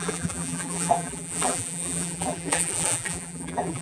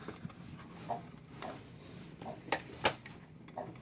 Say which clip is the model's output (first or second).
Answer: first